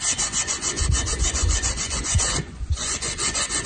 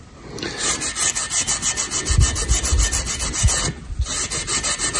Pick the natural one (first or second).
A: second